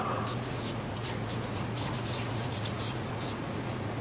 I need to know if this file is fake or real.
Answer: fake